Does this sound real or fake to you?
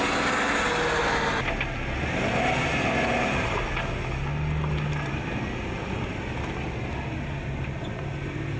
real